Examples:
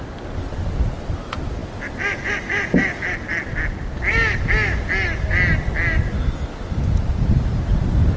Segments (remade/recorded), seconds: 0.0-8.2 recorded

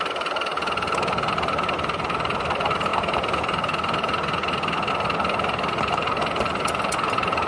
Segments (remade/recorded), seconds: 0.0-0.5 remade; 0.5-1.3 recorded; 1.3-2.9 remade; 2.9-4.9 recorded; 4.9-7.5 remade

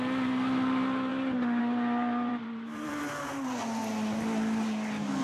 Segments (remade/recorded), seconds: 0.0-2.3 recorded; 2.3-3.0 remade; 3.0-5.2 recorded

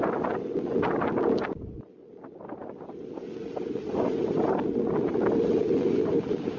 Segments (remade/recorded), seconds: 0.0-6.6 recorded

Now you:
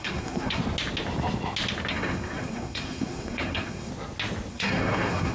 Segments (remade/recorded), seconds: 0.0-0.6 remade; 0.6-1.9 recorded; 1.9-3.9 remade; 3.9-4.5 recorded; 4.5-5.3 remade

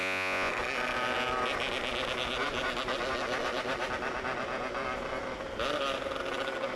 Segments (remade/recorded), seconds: 0.0-0.5 remade; 0.5-6.8 recorded

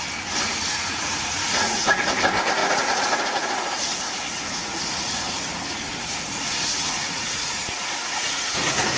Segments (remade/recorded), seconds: 0.0-0.6 recorded; 0.6-2.0 remade; 2.0-2.6 recorded; 2.6-3.8 remade; 3.8-4.3 recorded; 4.3-9.0 remade